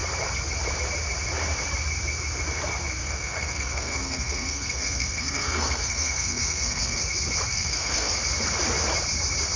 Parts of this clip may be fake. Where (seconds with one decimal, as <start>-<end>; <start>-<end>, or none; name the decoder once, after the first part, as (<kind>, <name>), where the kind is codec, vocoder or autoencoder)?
3.0-7.0 (codec, SNAC); 7.5-8.2